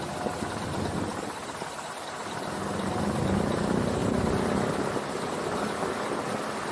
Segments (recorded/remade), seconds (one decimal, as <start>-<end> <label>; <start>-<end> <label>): 0.0-6.7 recorded

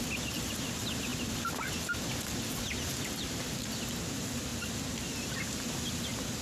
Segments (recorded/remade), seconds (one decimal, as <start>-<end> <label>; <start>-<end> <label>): 0.0-6.4 recorded